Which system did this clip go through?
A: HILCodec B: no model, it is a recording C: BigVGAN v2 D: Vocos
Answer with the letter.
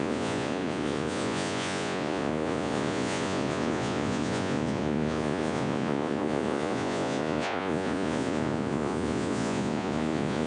D